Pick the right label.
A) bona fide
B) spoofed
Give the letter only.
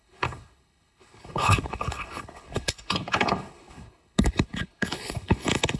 B